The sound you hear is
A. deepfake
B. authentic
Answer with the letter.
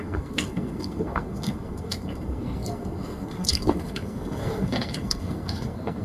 A